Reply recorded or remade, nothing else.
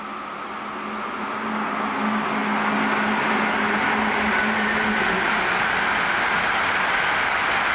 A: recorded